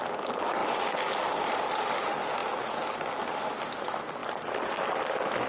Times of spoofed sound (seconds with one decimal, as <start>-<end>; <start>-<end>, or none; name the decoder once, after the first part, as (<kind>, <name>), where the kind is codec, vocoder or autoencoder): none